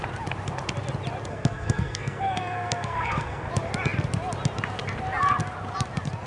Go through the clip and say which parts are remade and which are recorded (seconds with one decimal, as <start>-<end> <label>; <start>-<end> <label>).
0.0-1.3 recorded; 1.3-3.5 remade; 3.5-6.3 recorded